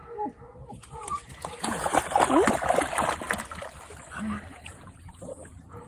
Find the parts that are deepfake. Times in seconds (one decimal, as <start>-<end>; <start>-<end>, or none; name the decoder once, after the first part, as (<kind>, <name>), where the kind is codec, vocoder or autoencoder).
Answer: 0.7-1.9 (vocoder, Vocos); 4.5-5.9